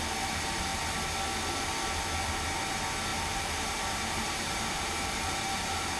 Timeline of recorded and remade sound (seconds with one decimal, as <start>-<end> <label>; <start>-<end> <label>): 0.0-3.1 recorded; 3.1-6.0 remade